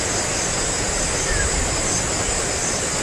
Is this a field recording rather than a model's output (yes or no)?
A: yes